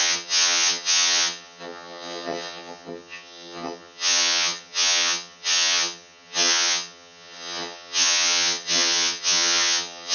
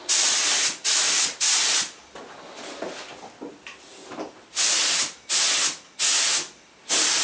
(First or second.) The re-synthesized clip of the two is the first